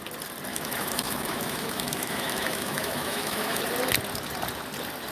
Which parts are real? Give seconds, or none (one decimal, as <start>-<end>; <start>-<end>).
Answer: 0.0-0.5; 3.6-5.1